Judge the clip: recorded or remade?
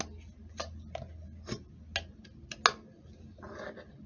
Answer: recorded